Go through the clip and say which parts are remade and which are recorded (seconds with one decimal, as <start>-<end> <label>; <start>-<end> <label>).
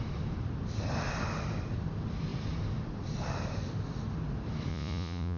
0.0-4.7 recorded; 4.7-5.4 remade